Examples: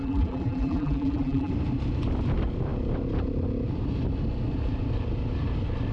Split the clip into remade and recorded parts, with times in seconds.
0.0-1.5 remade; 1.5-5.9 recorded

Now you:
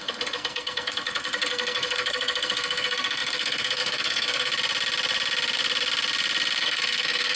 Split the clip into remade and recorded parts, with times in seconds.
0.0-4.5 remade; 4.5-6.6 recorded; 6.6-7.4 remade

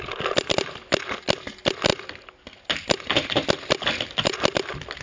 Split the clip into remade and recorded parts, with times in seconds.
0.0-5.0 recorded

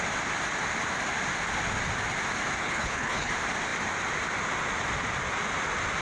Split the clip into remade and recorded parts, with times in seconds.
0.0-2.6 recorded; 2.6-3.3 remade; 3.3-6.0 recorded

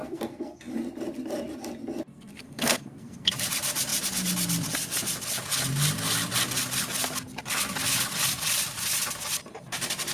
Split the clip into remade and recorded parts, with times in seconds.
0.0-0.7 remade; 0.7-2.1 recorded; 2.1-3.3 remade; 3.3-10.1 recorded

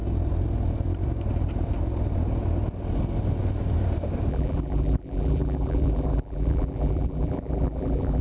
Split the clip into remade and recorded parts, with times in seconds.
0.0-4.3 recorded; 4.3-8.2 remade